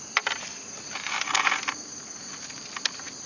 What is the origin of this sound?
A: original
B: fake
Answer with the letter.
A